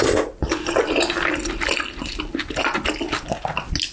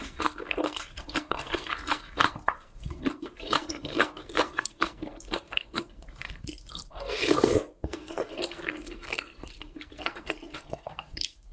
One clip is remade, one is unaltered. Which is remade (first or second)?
second